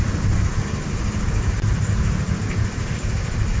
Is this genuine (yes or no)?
yes